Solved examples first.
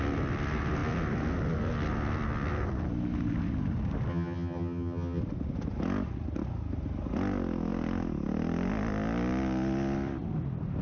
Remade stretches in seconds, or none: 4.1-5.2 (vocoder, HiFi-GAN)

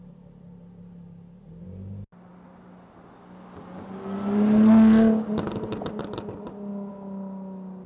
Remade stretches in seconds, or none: none

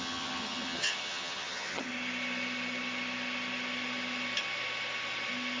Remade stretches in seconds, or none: 0.0-1.9 (vocoder, HiFi-GAN)

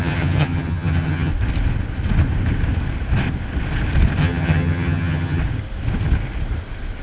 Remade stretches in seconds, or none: 0.0-1.3 (vocoder, HiFi-GAN); 4.2-5.4

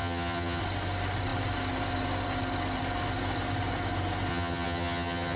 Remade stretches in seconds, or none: 0.0-0.6 (vocoder, HiFi-GAN); 4.3-5.4